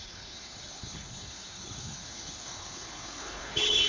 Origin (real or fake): fake